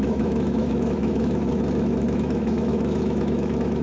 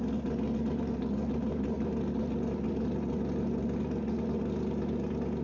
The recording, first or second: second